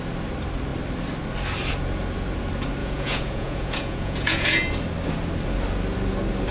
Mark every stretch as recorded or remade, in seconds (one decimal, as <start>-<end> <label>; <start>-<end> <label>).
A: 0.0-2.8 recorded; 2.8-4.7 remade; 4.7-6.5 recorded

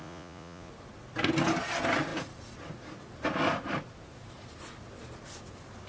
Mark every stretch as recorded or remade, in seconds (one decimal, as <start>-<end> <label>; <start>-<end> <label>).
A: 0.0-0.7 remade; 0.7-5.9 recorded

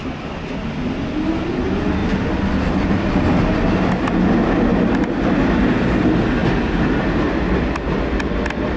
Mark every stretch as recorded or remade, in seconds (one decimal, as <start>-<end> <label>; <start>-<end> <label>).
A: 0.0-8.8 recorded